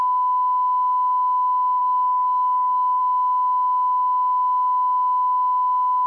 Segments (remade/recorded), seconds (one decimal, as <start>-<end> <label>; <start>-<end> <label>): 0.0-1.8 recorded; 1.8-3.0 remade; 3.0-6.1 recorded

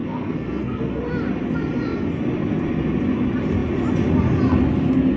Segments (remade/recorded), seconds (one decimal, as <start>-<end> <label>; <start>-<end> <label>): 0.0-1.0 remade; 1.0-5.2 recorded

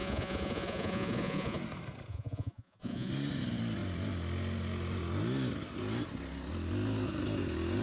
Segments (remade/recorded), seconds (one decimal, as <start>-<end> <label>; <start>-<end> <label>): 0.0-1.6 remade; 1.6-2.1 recorded; 2.1-3.1 remade; 3.1-7.8 recorded

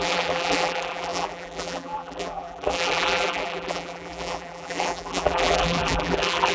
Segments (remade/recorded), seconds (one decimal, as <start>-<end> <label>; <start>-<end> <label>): 0.0-6.5 remade

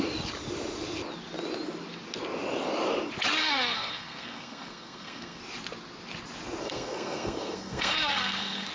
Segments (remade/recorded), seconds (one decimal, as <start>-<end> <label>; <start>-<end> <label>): 0.0-3.4 recorded; 3.4-5.4 remade; 5.4-6.6 recorded; 6.6-8.7 remade

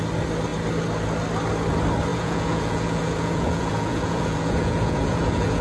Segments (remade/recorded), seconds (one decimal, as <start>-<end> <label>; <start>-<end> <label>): 0.0-2.1 recorded; 2.1-5.6 remade